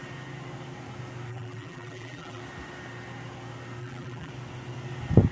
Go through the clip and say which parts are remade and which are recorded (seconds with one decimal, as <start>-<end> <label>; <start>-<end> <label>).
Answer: 0.0-1.3 recorded; 1.3-2.4 remade; 2.4-3.8 recorded; 3.8-4.3 remade; 4.3-5.3 recorded